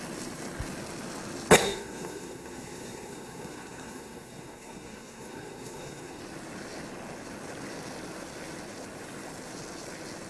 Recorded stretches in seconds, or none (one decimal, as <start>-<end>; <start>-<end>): 0.0-1.6; 6.2-10.3